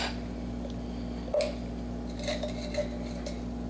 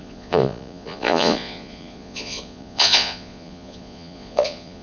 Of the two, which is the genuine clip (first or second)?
first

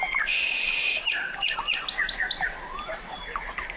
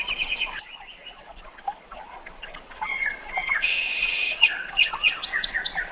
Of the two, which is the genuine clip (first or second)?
first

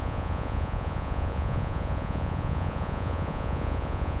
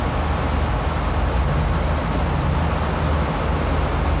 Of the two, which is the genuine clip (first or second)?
second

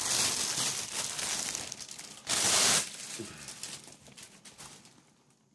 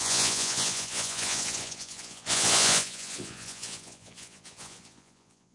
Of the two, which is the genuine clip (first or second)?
first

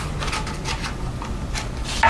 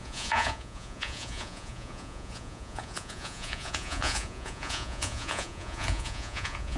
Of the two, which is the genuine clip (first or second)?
first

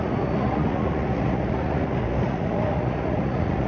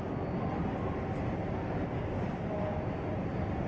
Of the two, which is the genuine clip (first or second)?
second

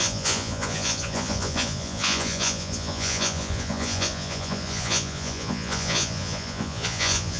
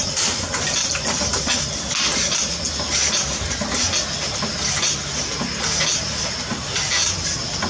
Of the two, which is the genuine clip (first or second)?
second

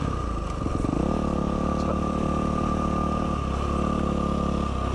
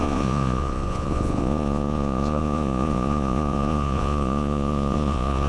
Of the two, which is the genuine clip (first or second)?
first